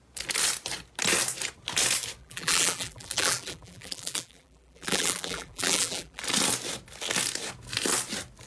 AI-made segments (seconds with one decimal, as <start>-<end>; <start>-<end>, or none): 2.2-6.2